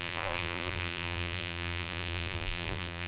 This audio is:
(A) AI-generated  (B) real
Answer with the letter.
A